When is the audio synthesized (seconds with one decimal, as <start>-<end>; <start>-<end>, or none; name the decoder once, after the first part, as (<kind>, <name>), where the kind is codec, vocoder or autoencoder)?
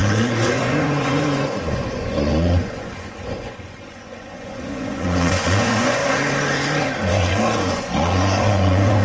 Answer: 0.0-6.0 (vocoder, Vocos); 7.3-9.0